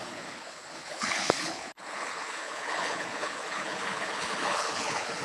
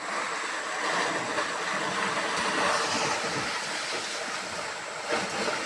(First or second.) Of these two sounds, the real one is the second